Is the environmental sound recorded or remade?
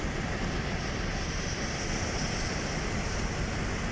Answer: recorded